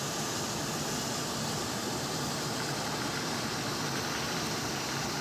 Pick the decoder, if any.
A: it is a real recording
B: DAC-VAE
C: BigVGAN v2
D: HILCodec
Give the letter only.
A